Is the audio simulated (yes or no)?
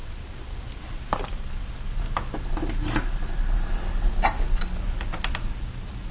no